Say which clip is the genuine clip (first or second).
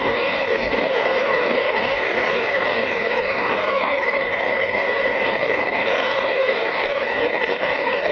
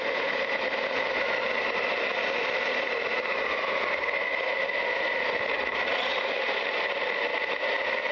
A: second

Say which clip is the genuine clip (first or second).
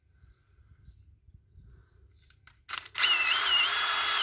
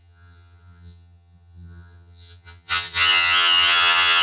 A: first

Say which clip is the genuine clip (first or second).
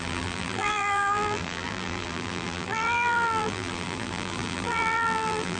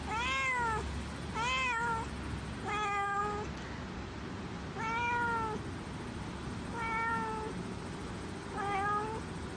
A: second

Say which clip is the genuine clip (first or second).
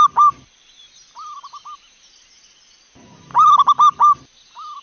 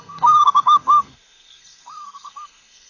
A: first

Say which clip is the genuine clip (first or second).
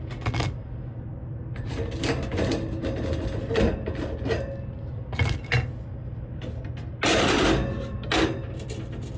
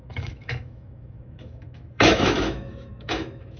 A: first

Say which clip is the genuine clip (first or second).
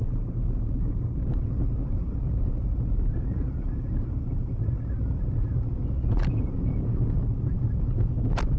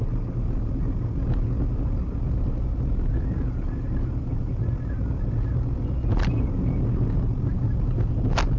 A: second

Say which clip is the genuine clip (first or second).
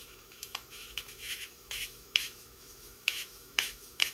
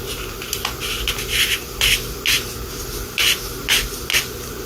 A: second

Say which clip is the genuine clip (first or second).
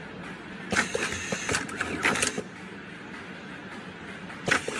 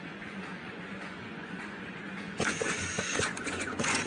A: first